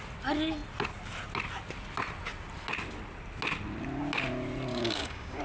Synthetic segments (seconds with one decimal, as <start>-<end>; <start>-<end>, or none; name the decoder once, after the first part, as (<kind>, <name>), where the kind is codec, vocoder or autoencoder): 4.7-5.4 (codec, DAC)